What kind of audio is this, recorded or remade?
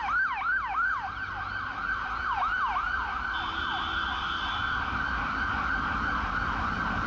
recorded